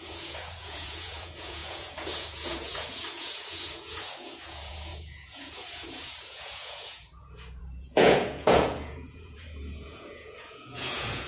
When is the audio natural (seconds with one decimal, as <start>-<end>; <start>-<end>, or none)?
none